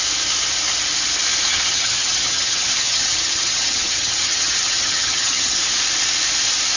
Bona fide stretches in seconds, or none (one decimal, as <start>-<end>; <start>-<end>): 0.0-1.5; 5.6-6.8